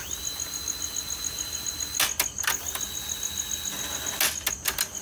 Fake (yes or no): no